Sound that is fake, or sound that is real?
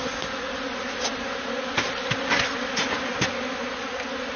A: real